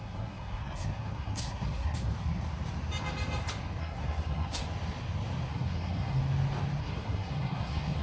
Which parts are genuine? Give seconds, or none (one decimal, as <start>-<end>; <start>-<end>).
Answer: 2.1-3.8; 4.6-5.5; 6.2-6.8